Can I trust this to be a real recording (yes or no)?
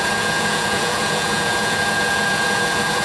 no